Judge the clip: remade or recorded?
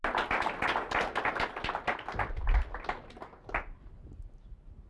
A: recorded